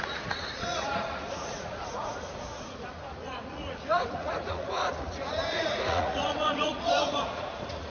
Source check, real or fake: fake